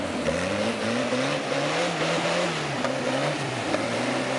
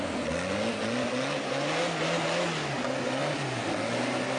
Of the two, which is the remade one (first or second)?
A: first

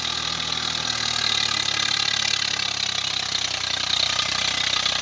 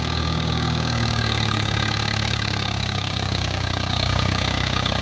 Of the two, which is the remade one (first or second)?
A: second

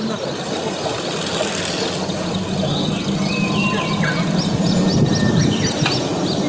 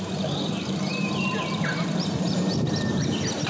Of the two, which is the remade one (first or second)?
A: second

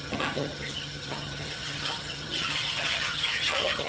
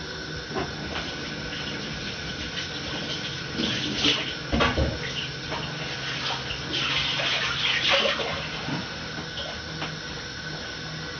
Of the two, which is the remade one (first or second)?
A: first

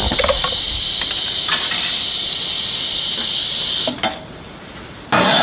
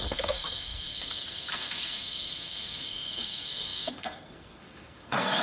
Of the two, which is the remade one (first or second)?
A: second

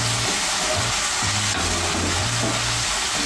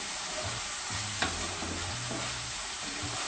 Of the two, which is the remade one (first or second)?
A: second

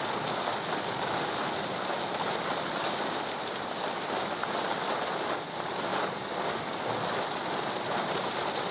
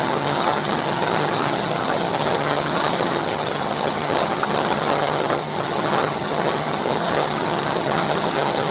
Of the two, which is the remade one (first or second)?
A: second